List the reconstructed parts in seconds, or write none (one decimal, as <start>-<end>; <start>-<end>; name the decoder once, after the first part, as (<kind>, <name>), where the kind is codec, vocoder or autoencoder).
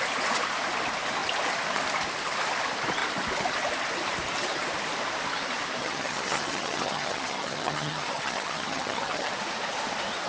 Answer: 5.8-9.3 (vocoder, HiFi-GAN)